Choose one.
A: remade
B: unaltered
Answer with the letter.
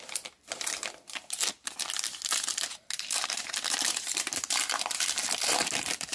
B